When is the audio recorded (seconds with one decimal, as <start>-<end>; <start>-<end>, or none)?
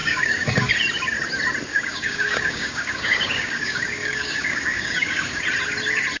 0.7-1.7; 5.4-6.2